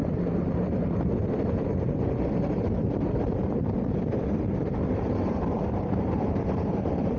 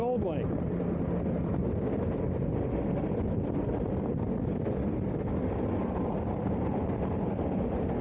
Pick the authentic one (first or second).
second